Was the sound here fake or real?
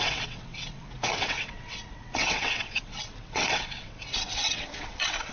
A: fake